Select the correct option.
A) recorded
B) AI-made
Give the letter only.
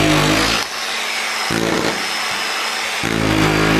A